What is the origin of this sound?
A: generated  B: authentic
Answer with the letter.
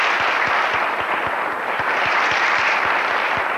B